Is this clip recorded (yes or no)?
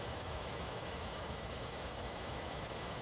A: no